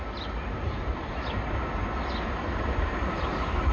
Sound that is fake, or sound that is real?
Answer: real